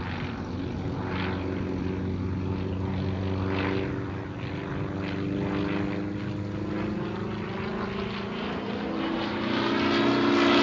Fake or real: real